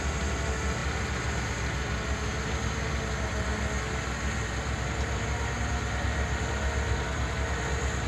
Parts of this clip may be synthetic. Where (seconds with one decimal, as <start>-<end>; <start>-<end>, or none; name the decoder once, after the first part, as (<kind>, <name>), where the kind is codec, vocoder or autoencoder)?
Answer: none